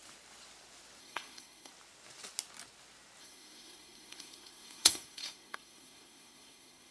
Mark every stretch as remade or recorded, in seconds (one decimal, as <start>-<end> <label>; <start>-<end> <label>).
0.0-1.0 recorded; 1.0-1.7 remade; 1.7-3.2 recorded; 3.2-6.9 remade